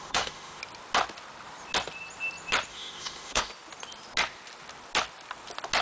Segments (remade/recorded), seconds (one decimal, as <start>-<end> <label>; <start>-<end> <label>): 0.0-0.6 remade; 0.6-2.7 recorded; 2.7-3.5 remade; 3.5-5.8 recorded